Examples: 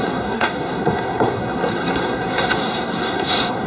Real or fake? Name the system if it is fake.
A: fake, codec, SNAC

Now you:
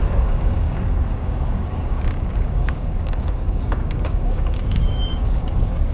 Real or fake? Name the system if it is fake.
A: fake, codec, DAC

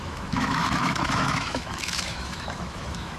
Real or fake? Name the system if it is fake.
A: fake, autoencoder, DAC-VAE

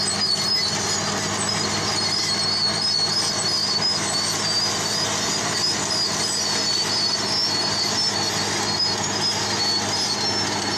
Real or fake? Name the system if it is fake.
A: real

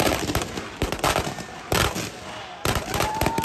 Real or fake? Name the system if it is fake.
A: real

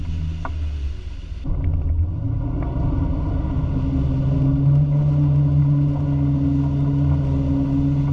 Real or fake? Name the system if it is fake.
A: real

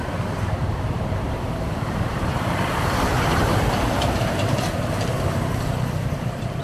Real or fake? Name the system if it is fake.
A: fake, vocoder, BigVGAN v2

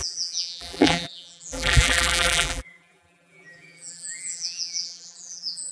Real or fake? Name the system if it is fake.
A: fake, vocoder, BigVGAN v2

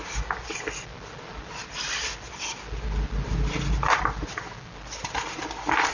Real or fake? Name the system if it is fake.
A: real